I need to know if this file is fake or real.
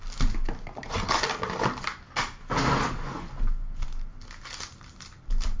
real